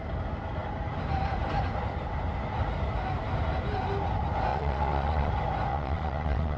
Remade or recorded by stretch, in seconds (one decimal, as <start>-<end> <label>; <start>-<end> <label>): 0.0-4.5 recorded; 4.5-5.3 remade; 5.3-5.7 recorded; 5.7-6.6 remade